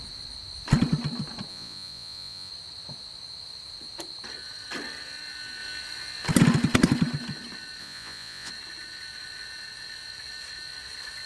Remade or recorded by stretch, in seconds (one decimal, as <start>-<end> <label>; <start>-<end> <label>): 0.0-1.5 recorded; 1.5-2.5 remade; 2.5-7.8 recorded; 7.8-8.5 remade; 8.5-11.3 recorded